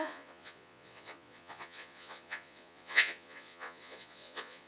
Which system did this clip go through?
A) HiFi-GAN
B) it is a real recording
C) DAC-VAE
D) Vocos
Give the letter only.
D